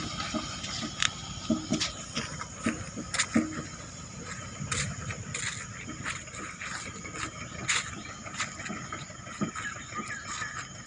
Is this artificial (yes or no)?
no